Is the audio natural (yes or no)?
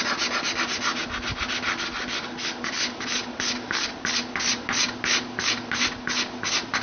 yes